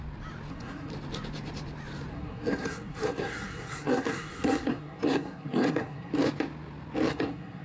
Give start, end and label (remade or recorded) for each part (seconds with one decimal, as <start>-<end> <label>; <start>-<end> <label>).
0.0-0.5 recorded; 0.5-0.9 remade; 0.9-2.1 recorded; 2.1-6.1 remade; 6.1-7.1 recorded; 7.1-7.6 remade